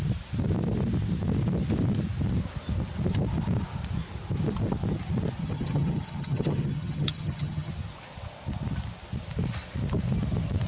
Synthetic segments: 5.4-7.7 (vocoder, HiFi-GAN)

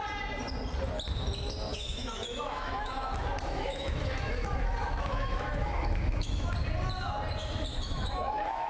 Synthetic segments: 1.7-6.5 (autoencoder, DAC-VAE); 7.7-8.7

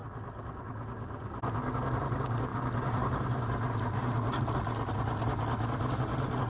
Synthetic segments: none